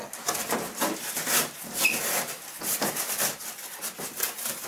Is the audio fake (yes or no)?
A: no